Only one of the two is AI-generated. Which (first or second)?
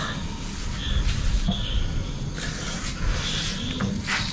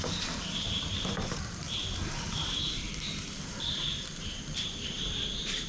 second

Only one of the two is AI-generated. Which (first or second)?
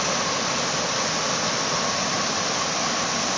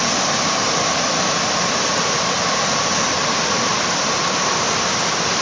second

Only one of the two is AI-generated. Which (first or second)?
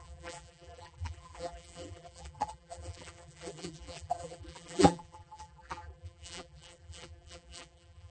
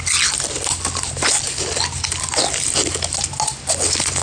first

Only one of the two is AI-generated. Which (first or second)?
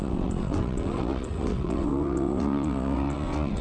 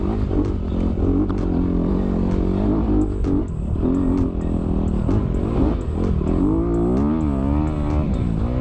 first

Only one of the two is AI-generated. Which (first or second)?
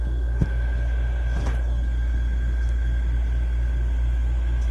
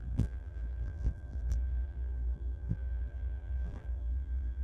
second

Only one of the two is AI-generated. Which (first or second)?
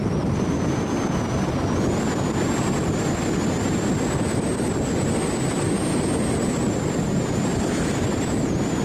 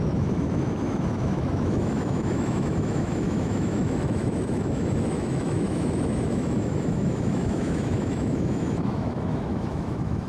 second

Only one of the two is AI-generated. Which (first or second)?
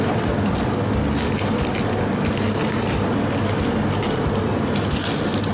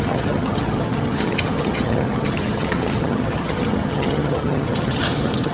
second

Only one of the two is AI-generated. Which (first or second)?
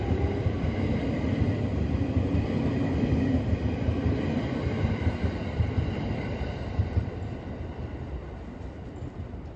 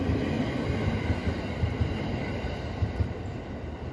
first